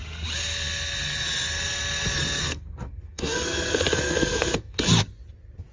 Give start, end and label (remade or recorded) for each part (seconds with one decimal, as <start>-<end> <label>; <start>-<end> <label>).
0.0-2.4 recorded; 2.4-4.9 remade; 4.9-5.7 recorded